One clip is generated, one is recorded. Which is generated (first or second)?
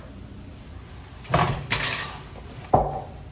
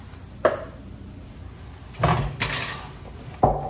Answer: first